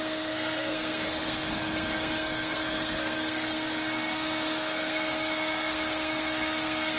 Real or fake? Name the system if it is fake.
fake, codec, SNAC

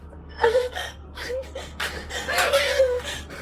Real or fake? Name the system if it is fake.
fake, codec, SNAC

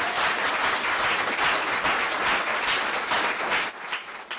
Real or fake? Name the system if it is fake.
real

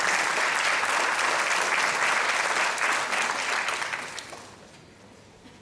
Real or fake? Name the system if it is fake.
real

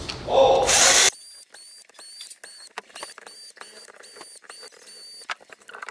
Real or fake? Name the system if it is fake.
real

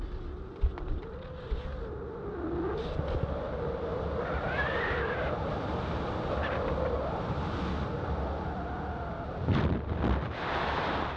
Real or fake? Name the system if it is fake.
real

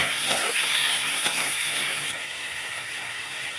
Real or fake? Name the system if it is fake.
fake, codec, SNAC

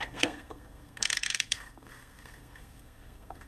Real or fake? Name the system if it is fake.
fake, codec, SNAC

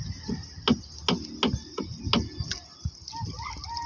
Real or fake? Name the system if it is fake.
real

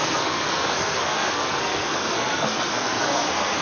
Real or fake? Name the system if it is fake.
fake, codec, SNAC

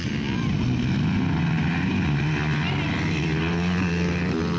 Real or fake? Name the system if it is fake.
real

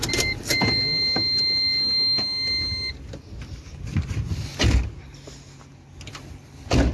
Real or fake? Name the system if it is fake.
real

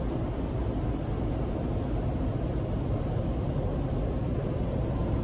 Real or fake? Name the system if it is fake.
real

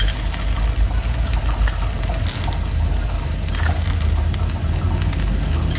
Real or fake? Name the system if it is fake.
real